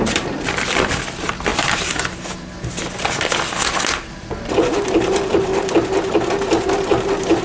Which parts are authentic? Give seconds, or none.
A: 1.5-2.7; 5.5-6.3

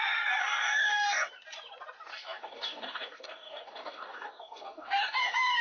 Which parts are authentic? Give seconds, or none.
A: 0.0-0.4; 1.3-2.1

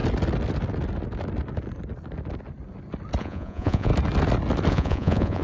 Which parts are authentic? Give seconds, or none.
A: 0.0-3.2; 3.9-4.7

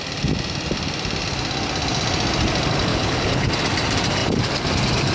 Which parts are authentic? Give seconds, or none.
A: 0.0-2.9; 3.5-5.1

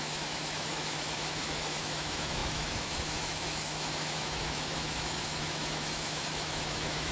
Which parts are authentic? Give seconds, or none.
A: none

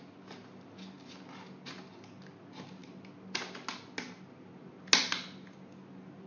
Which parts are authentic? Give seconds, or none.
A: 0.0-6.3